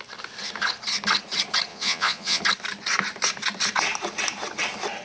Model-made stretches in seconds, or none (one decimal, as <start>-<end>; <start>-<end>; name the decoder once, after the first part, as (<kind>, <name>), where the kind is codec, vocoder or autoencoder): 1.7-2.4 (vocoder, Vocos)